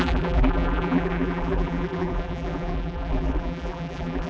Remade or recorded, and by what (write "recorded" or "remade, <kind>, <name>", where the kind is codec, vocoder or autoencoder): remade, vocoder, BigVGAN v2